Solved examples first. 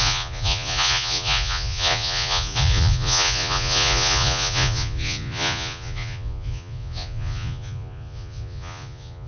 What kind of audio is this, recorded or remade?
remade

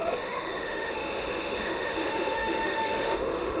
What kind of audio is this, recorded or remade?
remade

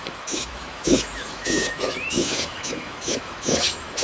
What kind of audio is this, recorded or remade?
remade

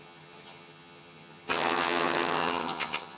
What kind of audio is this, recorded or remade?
remade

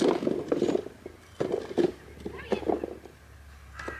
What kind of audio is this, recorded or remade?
recorded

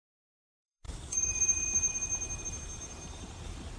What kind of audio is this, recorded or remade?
remade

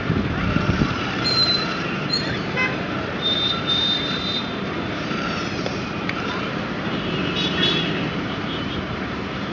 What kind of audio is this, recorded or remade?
remade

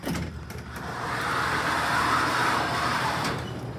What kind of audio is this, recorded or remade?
remade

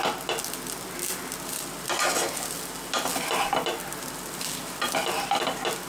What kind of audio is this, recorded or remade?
recorded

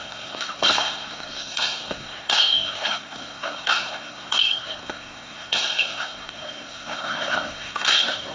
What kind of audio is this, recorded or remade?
remade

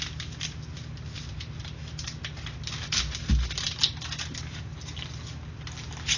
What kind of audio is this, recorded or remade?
recorded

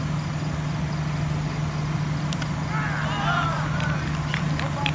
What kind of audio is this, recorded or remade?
recorded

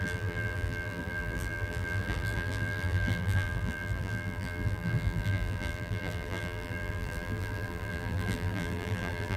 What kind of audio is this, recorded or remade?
remade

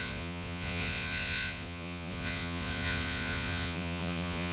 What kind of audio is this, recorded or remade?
remade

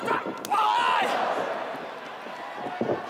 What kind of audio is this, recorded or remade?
recorded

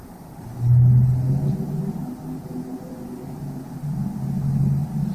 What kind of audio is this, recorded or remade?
recorded